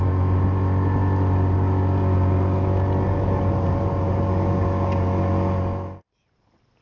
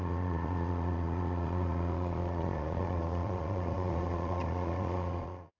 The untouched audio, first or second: first